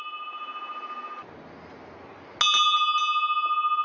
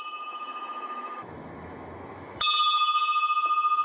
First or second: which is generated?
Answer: second